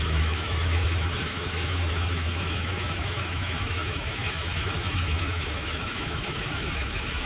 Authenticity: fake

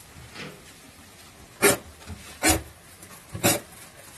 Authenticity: real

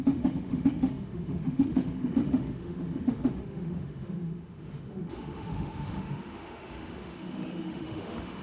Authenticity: fake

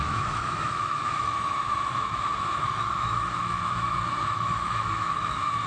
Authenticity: fake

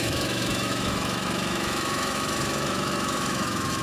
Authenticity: fake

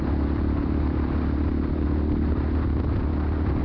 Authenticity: real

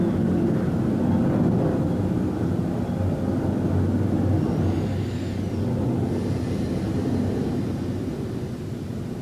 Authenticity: real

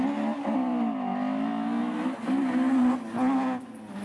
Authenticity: real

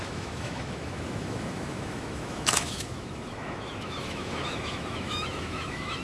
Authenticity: fake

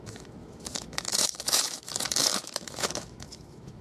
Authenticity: fake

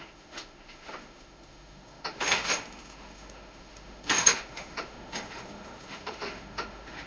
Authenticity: fake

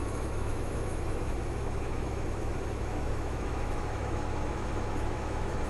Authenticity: fake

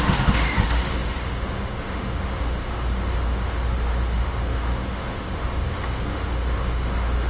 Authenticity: fake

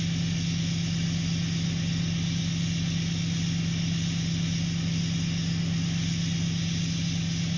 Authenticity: real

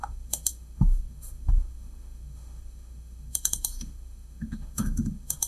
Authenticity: fake